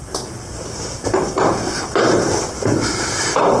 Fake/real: real